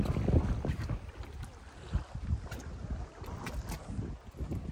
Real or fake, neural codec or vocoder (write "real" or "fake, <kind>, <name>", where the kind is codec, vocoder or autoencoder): real